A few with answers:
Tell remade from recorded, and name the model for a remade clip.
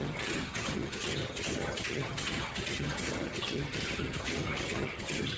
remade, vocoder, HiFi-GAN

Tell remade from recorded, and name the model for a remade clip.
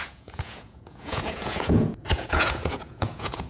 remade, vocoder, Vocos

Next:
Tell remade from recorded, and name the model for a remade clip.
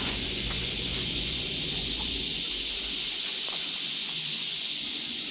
remade, vocoder, Vocos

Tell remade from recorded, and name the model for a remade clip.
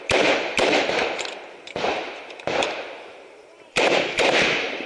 remade, vocoder, BigVGAN v2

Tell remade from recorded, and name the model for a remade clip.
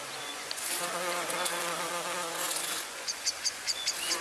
remade, vocoder, Vocos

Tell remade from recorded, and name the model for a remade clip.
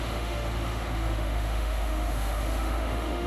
remade, autoencoder, DAC-VAE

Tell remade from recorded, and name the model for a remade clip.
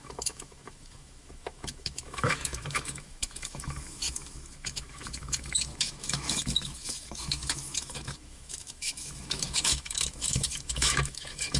remade, autoencoder, DAC-VAE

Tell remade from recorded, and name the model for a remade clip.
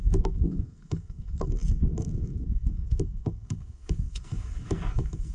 remade, codec, SNAC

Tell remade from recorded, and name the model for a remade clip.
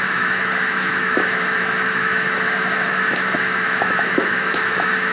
remade, autoencoder, DAC-VAE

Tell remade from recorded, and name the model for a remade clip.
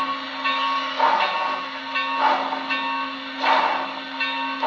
recorded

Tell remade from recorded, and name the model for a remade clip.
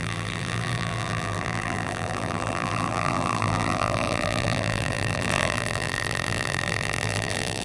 remade, vocoder, BigVGAN v2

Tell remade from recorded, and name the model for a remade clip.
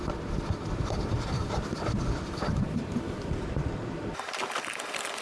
remade, vocoder, BigVGAN v2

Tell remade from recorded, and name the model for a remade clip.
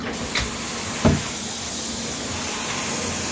recorded